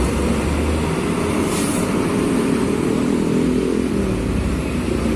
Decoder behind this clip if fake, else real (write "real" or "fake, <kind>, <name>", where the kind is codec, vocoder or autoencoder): real